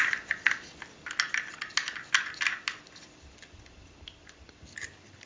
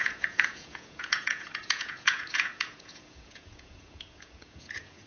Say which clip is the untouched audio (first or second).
first